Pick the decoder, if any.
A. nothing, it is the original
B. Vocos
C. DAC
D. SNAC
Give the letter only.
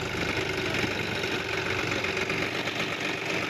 A